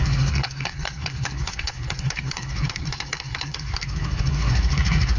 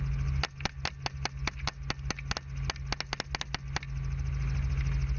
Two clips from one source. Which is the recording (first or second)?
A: second